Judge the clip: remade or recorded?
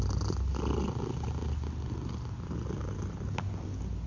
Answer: recorded